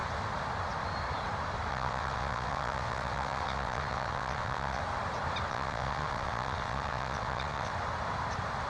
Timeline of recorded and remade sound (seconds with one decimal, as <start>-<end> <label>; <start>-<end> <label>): 0.0-1.7 recorded; 1.7-4.8 remade; 4.8-5.5 recorded; 5.5-7.7 remade; 7.7-8.7 recorded